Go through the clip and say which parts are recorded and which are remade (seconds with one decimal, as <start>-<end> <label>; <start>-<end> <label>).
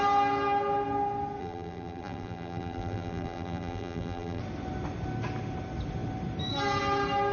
0.0-1.4 recorded; 1.4-4.4 remade; 4.4-7.3 recorded